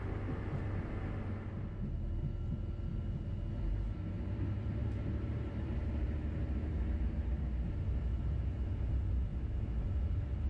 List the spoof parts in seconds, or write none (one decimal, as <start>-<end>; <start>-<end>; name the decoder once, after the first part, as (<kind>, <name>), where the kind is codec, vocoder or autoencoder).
4.8-5.9 (vocoder, BigVGAN v2)